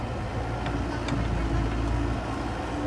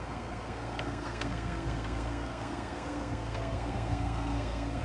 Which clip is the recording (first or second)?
first